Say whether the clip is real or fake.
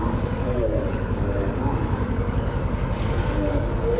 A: fake